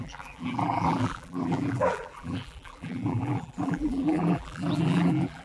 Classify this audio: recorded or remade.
remade